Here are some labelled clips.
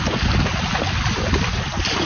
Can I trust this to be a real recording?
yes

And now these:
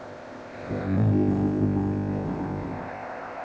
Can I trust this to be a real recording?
no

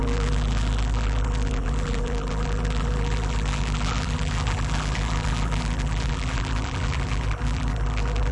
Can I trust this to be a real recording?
no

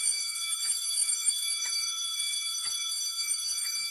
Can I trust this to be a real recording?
no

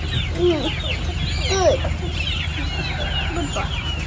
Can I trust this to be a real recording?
yes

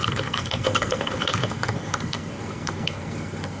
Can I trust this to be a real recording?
no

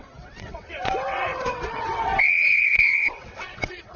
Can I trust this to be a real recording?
no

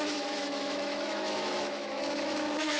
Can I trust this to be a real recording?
no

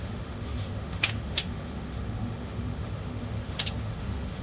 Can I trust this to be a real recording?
no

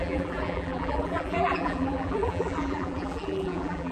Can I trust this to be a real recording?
no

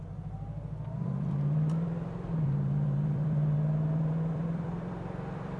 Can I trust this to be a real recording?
no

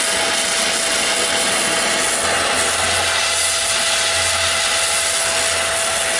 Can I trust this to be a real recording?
yes